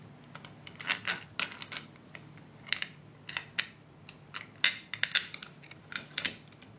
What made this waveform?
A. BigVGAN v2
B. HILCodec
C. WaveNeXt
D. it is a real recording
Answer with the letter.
D